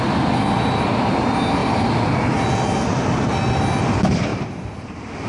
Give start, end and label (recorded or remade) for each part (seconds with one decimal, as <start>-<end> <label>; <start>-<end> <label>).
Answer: 0.0-5.3 recorded